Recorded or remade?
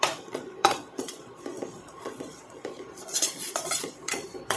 remade